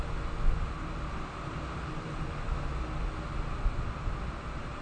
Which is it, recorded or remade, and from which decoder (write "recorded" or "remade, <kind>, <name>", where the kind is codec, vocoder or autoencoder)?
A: recorded